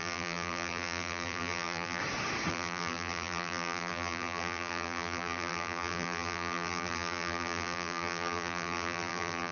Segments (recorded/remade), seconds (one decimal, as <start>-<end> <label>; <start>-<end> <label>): 0.0-2.0 remade; 2.0-2.5 recorded; 2.5-9.5 remade